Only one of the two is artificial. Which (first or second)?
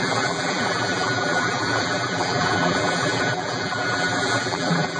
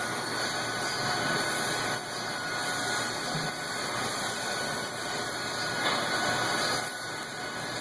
first